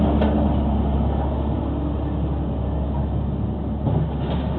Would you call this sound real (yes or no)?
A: yes